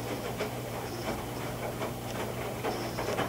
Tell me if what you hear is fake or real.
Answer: fake